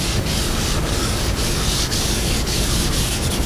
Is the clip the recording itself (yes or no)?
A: no